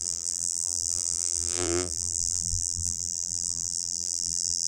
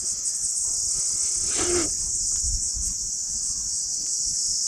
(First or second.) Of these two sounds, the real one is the second